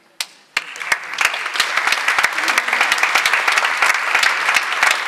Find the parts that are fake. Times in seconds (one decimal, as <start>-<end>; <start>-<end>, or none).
none